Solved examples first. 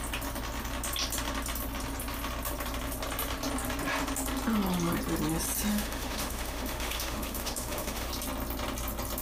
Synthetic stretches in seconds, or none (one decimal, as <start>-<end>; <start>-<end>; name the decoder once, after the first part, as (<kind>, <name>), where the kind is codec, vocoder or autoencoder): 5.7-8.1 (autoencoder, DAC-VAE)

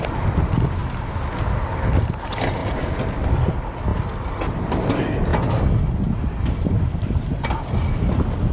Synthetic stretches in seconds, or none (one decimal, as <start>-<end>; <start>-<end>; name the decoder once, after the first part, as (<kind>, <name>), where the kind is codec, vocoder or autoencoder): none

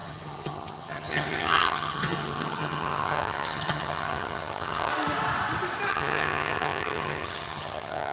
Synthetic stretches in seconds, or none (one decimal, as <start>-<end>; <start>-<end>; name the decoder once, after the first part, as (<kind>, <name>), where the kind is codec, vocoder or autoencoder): 0.0-4.9 (vocoder, HiFi-GAN); 5.9-8.1